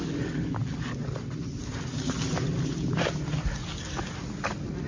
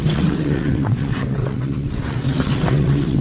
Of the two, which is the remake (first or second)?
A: second